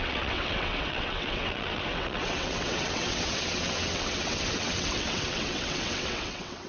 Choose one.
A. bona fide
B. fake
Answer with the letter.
B